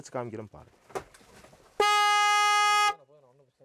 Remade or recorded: recorded